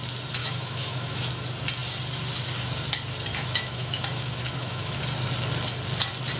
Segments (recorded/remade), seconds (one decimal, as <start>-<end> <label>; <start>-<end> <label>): 0.0-0.4 recorded; 0.4-1.3 remade; 1.3-3.3 recorded; 3.3-5.0 remade; 5.0-6.4 recorded